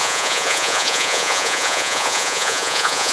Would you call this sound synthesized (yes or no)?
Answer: yes